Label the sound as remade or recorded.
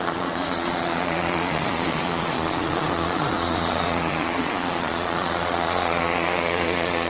remade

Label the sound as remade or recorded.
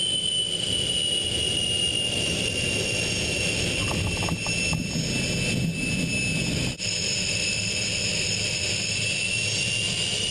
recorded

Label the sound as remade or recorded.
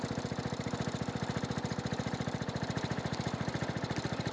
recorded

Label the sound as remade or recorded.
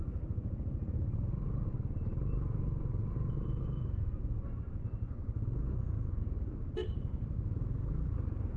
remade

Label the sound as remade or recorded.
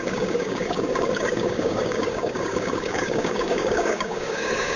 remade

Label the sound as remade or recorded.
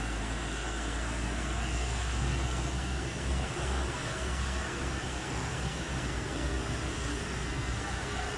remade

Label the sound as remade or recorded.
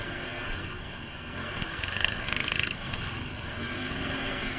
remade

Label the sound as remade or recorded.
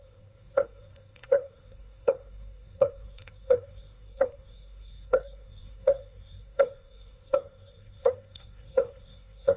remade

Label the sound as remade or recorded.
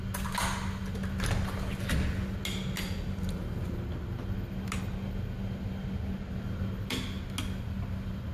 recorded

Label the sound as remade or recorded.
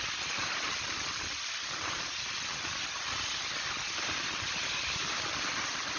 recorded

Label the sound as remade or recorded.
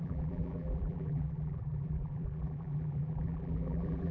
remade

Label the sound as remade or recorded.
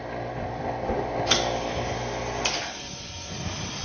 recorded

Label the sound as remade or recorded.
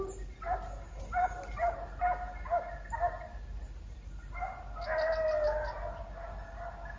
recorded